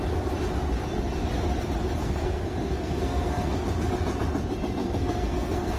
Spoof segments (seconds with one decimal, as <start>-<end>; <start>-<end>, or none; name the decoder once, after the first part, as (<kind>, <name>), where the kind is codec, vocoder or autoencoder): 2.0-3.9 (codec, SNAC); 4.8-5.8